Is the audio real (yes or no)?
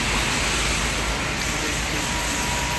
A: yes